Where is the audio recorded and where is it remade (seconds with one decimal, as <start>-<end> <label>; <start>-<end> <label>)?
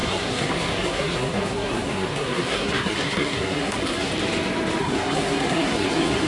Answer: 0.0-4.1 remade; 4.1-4.8 recorded; 4.8-6.3 remade